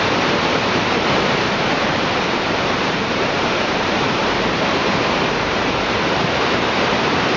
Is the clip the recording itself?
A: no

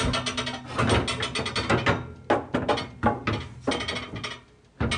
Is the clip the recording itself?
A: yes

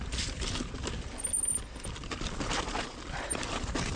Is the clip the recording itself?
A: yes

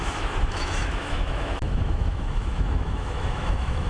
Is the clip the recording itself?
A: no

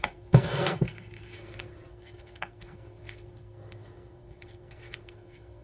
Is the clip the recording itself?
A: no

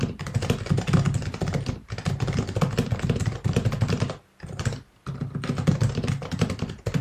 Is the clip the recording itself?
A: yes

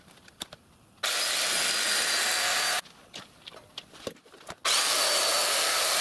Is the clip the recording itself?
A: yes